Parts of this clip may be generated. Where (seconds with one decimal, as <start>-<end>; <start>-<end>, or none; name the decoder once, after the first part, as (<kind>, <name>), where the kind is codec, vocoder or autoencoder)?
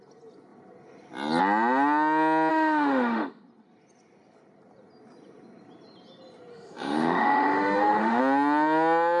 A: 2.5-3.4 (autoencoder, DAC-VAE); 6.5-8.2